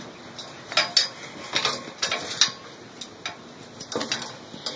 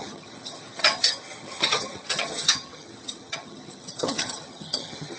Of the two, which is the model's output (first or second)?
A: second